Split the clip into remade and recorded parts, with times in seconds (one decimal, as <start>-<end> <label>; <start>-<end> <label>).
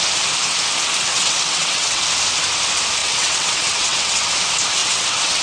0.0-1.1 recorded; 1.1-2.0 remade; 2.0-3.0 recorded; 3.0-4.3 remade; 4.3-4.8 recorded; 4.8-5.4 remade